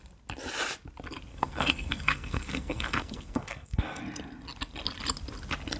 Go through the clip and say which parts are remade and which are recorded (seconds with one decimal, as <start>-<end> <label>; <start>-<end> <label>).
0.0-1.3 recorded; 1.3-4.0 remade; 4.0-5.8 recorded